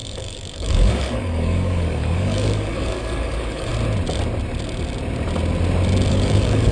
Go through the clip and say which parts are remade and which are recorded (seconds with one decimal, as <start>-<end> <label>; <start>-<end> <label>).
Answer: 0.0-3.7 remade; 3.7-6.1 recorded; 6.1-6.7 remade